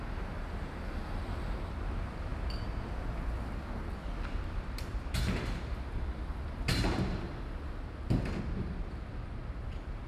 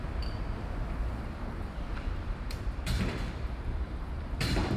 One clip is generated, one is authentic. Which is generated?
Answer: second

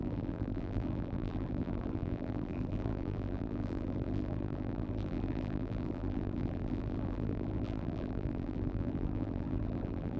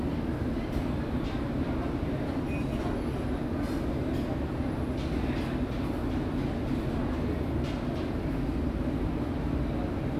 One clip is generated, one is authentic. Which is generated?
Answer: first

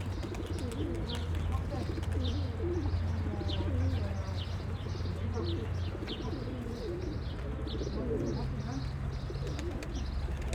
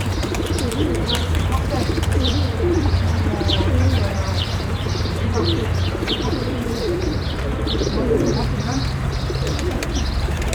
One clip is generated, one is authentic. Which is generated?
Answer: second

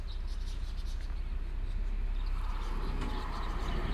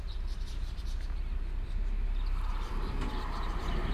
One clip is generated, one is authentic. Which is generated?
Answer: second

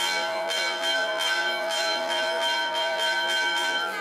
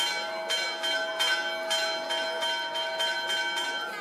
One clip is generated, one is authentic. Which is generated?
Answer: first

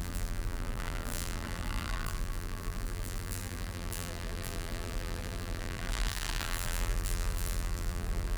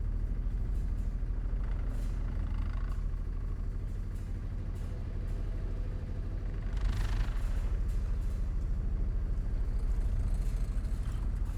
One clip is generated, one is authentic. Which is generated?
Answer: first